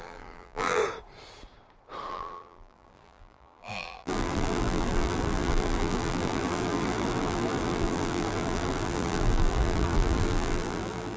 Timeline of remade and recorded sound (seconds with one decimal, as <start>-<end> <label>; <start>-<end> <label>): 0.0-0.8 remade; 0.8-2.1 recorded; 2.1-11.2 remade